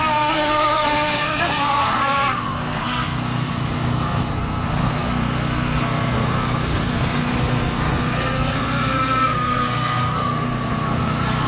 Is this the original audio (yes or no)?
no